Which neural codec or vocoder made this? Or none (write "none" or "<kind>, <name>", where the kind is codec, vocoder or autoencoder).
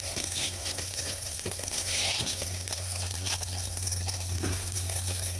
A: codec, SNAC